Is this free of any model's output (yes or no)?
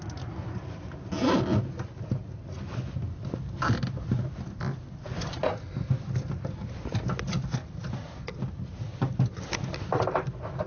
yes